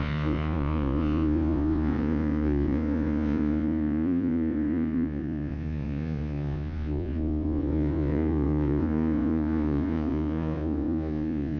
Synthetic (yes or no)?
yes